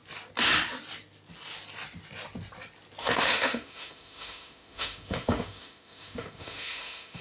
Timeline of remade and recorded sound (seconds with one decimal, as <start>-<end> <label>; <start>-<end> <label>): 0.0-3.0 recorded; 3.0-7.2 remade